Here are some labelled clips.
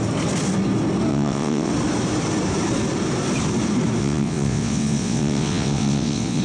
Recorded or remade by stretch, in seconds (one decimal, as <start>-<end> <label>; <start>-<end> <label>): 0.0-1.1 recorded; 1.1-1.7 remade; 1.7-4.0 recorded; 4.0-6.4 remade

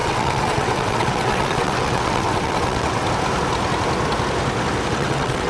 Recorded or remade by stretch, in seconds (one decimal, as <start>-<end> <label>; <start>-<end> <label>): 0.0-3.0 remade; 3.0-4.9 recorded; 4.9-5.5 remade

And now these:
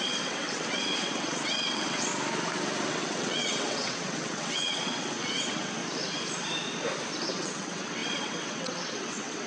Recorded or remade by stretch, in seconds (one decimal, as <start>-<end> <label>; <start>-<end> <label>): 0.0-2.1 remade; 2.1-2.9 recorded; 2.9-5.8 remade; 5.8-7.3 recorded; 7.3-9.5 remade

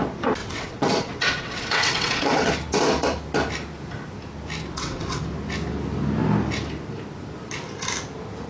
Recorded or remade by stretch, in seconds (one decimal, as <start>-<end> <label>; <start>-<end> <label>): 0.0-0.4 recorded; 0.4-2.5 remade; 2.5-4.7 recorded; 4.7-5.2 remade; 5.2-8.5 recorded

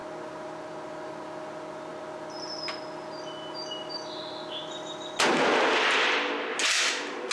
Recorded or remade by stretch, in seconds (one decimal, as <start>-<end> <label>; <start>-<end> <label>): 0.0-7.3 recorded